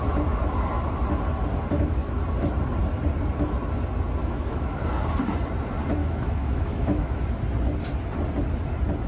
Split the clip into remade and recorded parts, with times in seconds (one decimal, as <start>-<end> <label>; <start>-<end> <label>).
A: 0.0-4.2 recorded; 4.2-4.8 remade; 4.8-6.0 recorded; 6.0-7.2 remade; 7.2-9.1 recorded